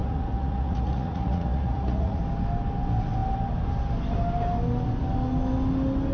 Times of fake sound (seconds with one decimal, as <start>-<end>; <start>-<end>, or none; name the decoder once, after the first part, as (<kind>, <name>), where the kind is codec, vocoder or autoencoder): 0.0-2.2 (vocoder, Vocos)